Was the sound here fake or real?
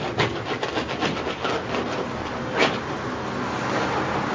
real